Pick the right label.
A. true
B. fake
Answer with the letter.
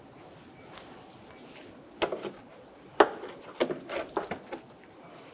A